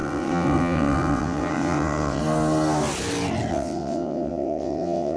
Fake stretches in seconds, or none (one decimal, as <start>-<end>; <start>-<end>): 0.0-2.2; 3.5-5.2